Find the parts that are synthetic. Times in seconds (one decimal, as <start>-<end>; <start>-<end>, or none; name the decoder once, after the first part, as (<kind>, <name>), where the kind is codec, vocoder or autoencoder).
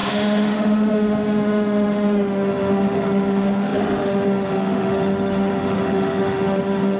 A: 0.0-7.0 (autoencoder, DAC-VAE)